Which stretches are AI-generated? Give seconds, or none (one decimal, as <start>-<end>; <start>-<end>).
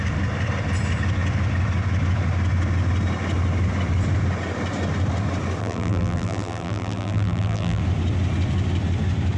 5.6-7.8